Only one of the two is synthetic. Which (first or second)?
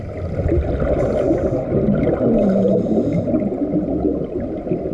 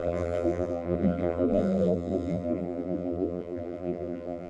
second